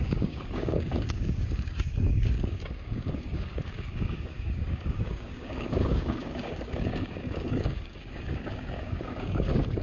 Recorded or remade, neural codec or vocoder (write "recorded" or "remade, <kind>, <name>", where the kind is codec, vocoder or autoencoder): remade, codec, DAC